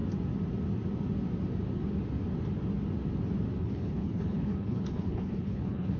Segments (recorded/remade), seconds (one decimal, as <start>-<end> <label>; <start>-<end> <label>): 0.0-3.6 recorded; 3.6-6.0 remade